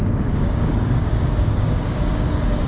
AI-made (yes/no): yes